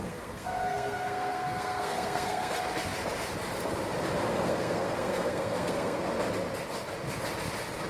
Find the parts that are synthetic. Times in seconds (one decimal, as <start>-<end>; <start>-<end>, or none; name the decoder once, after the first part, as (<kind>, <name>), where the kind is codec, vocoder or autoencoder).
0.0-2.5 (codec, SNAC); 4.3-6.0